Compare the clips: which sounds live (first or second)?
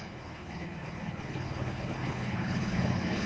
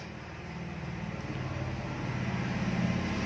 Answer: second